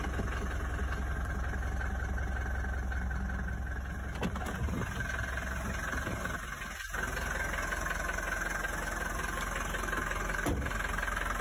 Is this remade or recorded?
recorded